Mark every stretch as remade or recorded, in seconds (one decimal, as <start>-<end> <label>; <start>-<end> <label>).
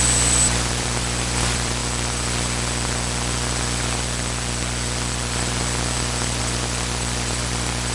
0.0-1.8 remade; 1.8-6.4 recorded; 6.4-7.9 remade